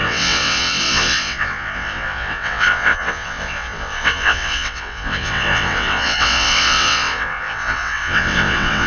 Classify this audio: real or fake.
fake